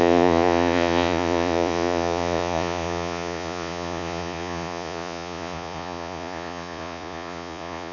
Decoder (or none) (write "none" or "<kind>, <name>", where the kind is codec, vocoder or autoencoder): vocoder, Vocos